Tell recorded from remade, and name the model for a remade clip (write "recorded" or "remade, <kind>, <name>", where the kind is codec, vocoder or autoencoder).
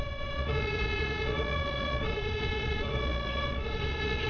remade, vocoder, Vocos